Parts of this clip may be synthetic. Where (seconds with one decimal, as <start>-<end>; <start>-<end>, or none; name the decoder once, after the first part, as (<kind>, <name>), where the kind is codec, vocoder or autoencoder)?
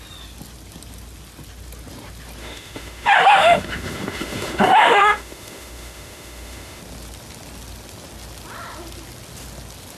2.4-6.8 (autoencoder, DAC-VAE)